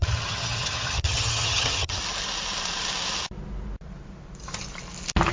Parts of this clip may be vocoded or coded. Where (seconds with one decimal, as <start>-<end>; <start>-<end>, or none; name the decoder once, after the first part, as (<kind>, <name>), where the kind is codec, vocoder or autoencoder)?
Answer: 0.0-2.0 (vocoder, HiFi-GAN)

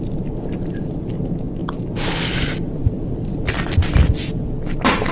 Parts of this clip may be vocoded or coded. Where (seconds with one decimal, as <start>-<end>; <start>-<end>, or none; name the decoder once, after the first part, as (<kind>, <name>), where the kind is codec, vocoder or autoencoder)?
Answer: none

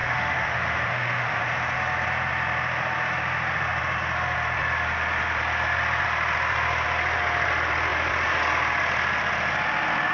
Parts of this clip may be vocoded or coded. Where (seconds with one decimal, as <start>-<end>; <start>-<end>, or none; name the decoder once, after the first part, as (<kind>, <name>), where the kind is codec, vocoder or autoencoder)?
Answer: 0.0-1.4 (autoencoder, DAC-VAE)

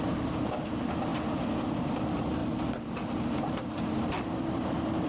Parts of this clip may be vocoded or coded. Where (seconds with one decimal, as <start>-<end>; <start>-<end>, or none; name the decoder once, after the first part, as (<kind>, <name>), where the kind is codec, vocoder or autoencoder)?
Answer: 0.0-1.1 (vocoder, BigVGAN v2); 1.9-5.1

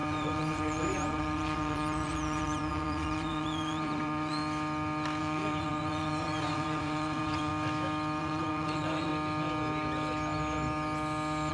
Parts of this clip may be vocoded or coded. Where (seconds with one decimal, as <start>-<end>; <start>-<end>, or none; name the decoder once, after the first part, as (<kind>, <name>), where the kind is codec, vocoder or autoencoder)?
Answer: 0.0-4.4 (vocoder, Vocos); 5.2-7.5; 8.2-9.1

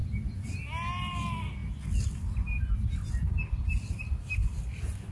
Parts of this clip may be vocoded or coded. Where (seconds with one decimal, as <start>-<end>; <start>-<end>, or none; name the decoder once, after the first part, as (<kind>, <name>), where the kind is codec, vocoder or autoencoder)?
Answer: none

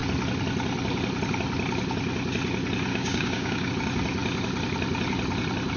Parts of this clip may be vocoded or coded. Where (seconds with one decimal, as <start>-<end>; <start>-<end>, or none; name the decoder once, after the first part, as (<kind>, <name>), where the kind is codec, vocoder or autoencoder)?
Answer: 2.9-3.7 (codec, DAC)

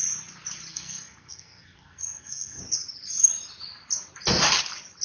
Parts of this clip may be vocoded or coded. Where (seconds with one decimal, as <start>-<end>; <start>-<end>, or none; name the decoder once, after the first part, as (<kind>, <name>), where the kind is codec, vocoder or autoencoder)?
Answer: 0.7-2.6 (codec, SNAC)